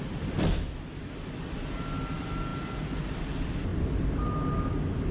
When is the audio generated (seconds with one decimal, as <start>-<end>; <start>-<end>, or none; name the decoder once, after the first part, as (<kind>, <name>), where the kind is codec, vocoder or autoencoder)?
3.7-4.3 (vocoder, BigVGAN v2)